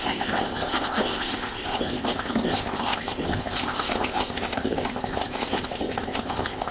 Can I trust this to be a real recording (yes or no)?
no